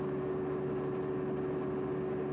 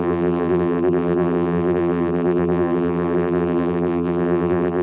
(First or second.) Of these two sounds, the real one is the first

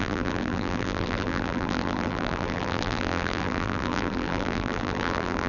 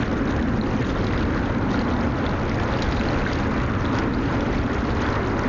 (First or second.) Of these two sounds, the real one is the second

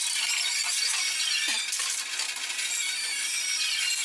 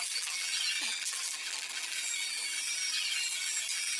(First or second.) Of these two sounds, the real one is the first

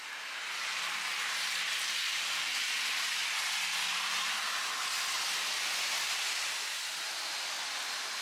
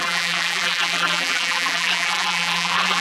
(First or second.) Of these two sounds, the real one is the first